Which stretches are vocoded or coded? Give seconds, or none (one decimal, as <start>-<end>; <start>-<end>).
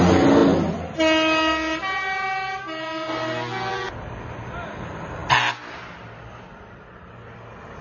none